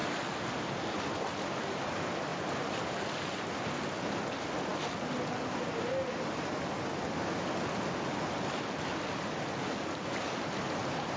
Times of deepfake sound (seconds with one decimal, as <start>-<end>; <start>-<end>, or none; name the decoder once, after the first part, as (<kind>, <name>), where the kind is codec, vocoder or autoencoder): none